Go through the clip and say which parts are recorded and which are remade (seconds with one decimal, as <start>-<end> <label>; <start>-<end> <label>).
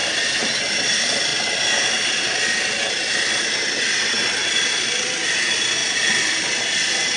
0.0-7.2 recorded